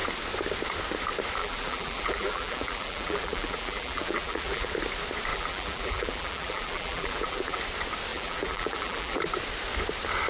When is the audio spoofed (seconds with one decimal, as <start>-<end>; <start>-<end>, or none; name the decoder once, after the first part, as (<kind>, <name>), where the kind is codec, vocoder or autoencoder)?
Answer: 1.4-4.7 (vocoder, BigVGAN v2); 5.3-7.6; 8.1-9.2